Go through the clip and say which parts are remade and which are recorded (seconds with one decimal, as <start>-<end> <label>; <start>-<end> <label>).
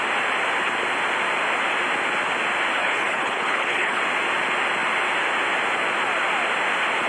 0.0-2.8 recorded; 2.8-4.0 remade; 4.0-7.1 recorded